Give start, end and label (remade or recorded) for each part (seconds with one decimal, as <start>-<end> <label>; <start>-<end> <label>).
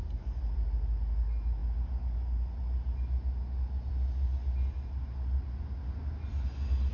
0.0-6.9 recorded